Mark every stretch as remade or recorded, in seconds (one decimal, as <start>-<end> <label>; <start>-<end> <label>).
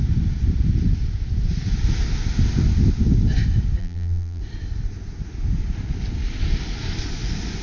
0.0-3.8 recorded; 3.8-4.4 remade; 4.4-7.6 recorded